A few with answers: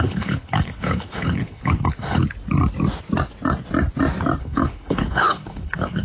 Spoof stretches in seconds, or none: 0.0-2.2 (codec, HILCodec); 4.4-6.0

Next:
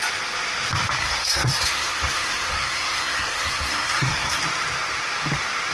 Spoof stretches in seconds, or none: 1.0-4.4 (codec, SNAC)